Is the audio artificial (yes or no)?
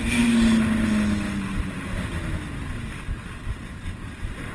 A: no